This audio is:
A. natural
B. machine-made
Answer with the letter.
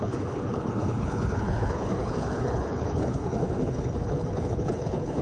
B